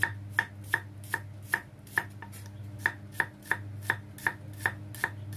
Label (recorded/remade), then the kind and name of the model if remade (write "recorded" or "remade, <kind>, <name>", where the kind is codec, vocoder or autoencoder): recorded